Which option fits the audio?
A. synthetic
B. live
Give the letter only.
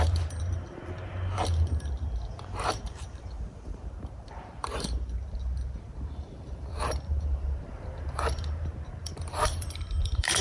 A